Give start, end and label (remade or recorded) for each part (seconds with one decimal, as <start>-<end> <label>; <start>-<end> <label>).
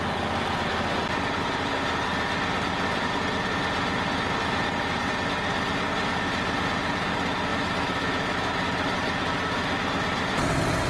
0.0-7.5 recorded; 7.5-8.5 remade; 8.5-10.9 recorded